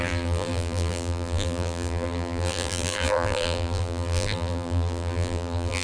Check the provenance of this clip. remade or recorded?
remade